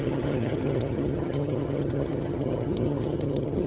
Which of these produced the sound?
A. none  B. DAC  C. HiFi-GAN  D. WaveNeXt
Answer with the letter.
C